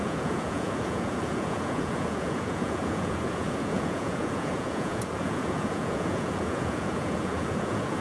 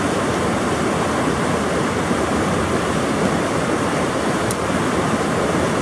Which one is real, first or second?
second